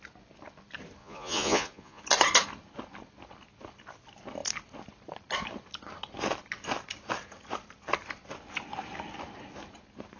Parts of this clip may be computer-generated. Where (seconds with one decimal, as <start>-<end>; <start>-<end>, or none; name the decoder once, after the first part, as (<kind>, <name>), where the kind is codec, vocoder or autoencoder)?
1.0-2.0 (vocoder, Vocos)